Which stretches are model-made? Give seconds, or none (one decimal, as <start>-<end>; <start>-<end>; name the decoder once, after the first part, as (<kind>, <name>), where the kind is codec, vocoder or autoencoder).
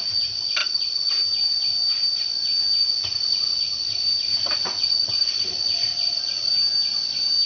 0.6-1.1 (vocoder, Vocos); 2.9-3.6; 4.3-6.5